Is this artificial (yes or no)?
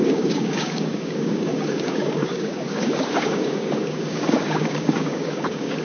yes